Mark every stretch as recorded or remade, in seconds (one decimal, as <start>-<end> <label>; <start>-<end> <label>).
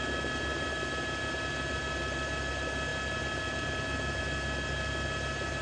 0.0-5.6 recorded